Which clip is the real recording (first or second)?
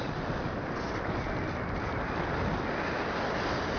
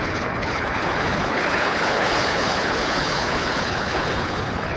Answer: first